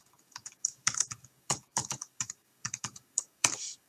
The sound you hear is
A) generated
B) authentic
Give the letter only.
A